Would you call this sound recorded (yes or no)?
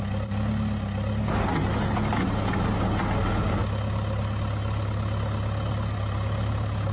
yes